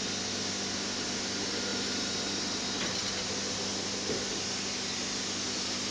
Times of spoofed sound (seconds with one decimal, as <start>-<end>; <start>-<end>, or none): none